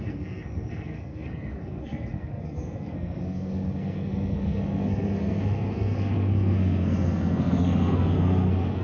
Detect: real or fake fake